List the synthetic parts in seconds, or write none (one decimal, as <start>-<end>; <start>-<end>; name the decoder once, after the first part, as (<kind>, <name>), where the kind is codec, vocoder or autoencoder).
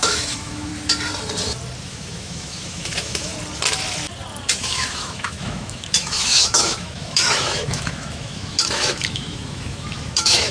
0.0-0.7 (autoencoder, DAC-VAE); 1.8-3.3; 4.5-10.5